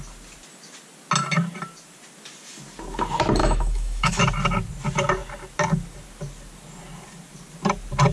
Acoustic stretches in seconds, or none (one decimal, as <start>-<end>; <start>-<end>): 0.0-3.4; 4.2-8.1